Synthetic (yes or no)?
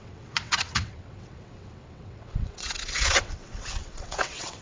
yes